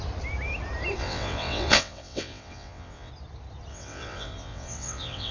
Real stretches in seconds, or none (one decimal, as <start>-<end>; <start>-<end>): 0.0-1.0; 3.1-3.7